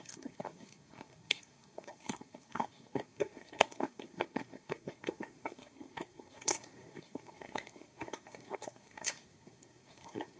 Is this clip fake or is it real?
fake